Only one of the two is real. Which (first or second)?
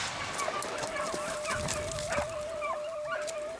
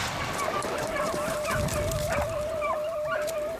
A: first